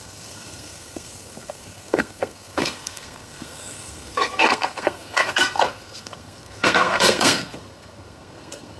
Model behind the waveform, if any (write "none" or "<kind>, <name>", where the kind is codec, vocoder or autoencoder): codec, SNAC